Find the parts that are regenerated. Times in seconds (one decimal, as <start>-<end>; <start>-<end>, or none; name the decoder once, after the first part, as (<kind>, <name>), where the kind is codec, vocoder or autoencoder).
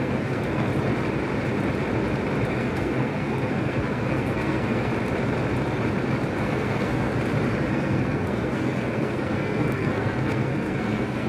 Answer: 0.0-0.7 (codec, SNAC); 2.5-4.9; 6.4-7.1; 7.7-11.3